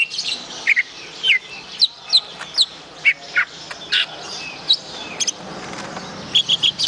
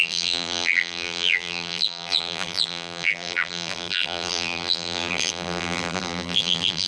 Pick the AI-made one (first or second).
second